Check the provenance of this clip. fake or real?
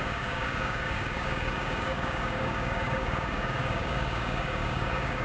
fake